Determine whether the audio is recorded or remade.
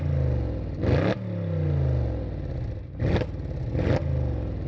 recorded